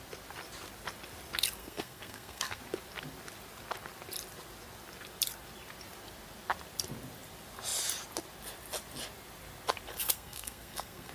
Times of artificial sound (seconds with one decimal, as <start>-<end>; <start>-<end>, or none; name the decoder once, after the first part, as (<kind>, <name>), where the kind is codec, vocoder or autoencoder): 1.6-2.6 (codec, SNAC); 10.0-11.1